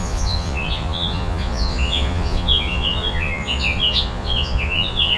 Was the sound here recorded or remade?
remade